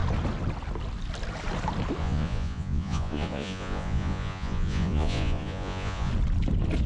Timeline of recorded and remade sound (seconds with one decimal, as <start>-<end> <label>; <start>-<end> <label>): 0.0-2.0 recorded; 2.0-6.1 remade; 6.1-6.9 recorded